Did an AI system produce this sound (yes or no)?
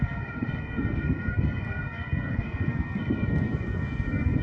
yes